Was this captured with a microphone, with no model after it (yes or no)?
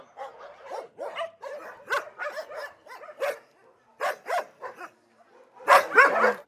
yes